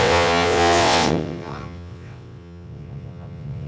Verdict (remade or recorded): remade